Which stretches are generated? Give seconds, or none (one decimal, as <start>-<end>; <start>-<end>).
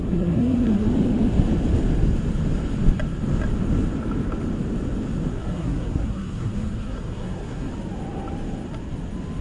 0.0-0.9; 5.3-7.7